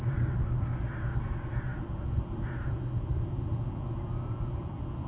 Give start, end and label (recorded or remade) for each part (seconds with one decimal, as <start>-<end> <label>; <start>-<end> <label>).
0.0-5.1 recorded